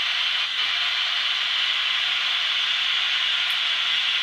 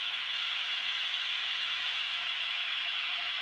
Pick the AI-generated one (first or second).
second